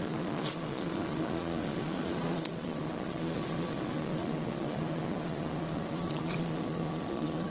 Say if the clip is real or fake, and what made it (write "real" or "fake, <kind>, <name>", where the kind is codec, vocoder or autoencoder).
fake, vocoder, Vocos